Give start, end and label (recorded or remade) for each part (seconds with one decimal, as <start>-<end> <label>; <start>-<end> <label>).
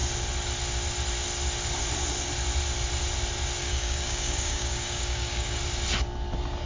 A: 0.0-3.6 recorded; 3.6-5.6 remade; 5.6-6.7 recorded